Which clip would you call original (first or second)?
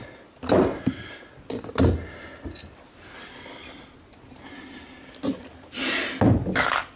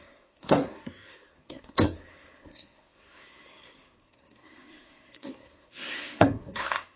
first